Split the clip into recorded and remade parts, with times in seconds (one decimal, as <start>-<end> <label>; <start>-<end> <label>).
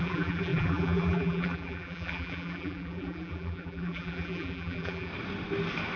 0.0-5.1 remade; 5.1-6.0 recorded